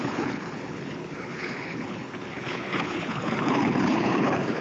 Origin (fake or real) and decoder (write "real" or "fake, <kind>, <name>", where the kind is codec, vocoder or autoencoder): fake, codec, HILCodec